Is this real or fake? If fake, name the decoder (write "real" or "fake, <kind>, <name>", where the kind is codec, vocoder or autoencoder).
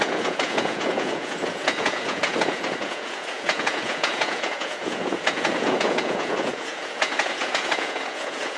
fake, vocoder, Vocos